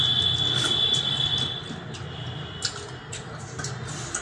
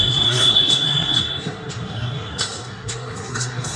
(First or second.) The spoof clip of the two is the second